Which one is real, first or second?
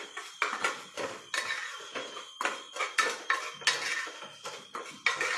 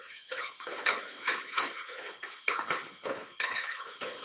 first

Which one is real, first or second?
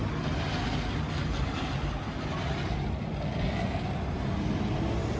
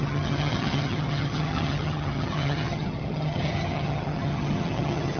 first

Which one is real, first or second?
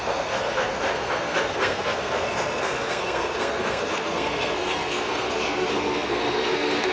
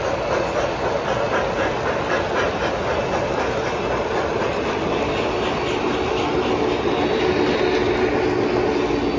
second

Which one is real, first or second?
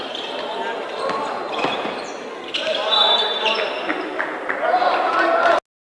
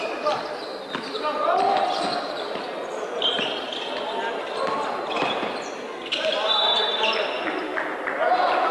first